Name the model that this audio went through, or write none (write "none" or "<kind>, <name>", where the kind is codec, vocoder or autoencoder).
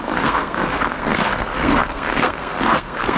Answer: codec, SNAC